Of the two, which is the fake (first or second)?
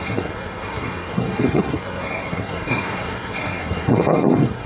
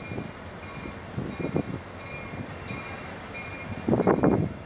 first